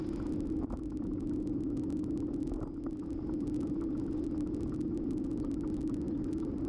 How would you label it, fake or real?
real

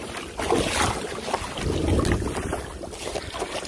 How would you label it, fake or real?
real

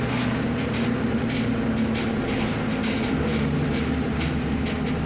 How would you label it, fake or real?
real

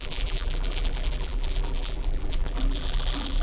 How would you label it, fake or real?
fake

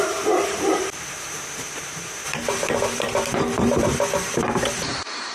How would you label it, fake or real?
fake